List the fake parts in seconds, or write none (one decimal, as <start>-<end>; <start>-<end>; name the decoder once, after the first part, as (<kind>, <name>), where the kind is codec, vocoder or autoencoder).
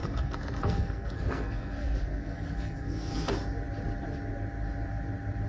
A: 0.0-3.3 (codec, SNAC)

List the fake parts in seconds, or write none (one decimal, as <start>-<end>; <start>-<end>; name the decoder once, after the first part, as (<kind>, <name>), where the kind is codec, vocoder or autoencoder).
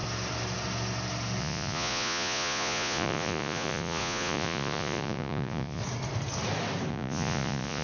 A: 1.4-5.8 (vocoder, Vocos); 6.9-7.8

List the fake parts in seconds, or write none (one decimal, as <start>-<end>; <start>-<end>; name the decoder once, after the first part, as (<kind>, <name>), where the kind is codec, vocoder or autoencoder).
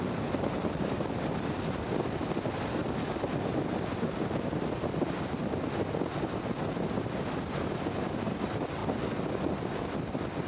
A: none